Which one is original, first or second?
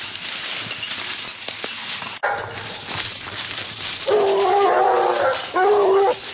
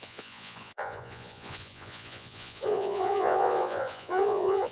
first